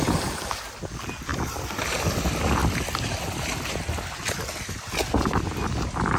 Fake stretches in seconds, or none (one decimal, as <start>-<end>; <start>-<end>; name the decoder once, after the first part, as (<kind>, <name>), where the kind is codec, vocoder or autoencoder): 1.3-1.9 (vocoder, BigVGAN v2); 2.6-3.7